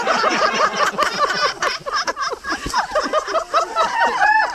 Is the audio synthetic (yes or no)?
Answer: no